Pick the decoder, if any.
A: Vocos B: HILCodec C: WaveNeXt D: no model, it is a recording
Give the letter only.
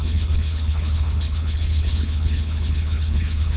B